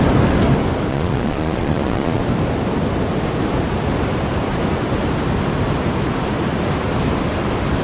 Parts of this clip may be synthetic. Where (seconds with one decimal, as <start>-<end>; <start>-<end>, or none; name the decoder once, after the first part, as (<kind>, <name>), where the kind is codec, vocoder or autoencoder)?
0.9-2.2 (vocoder, Vocos)